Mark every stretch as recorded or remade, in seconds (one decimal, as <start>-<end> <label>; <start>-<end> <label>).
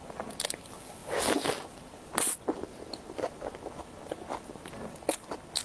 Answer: 0.0-5.6 recorded